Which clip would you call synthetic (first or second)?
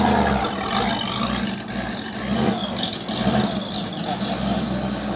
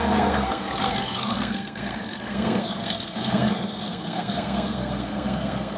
second